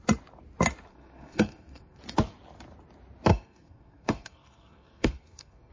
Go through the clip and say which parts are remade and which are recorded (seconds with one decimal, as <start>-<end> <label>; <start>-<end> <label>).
0.0-0.9 recorded; 0.9-2.0 remade; 2.0-3.3 recorded; 3.3-5.7 remade